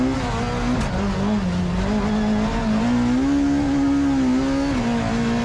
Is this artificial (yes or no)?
no